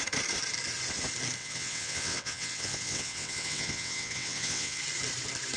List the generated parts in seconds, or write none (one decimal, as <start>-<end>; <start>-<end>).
1.4-4.8